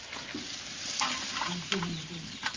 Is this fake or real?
real